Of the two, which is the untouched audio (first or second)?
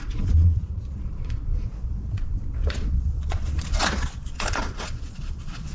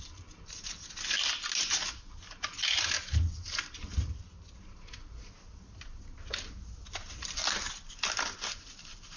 second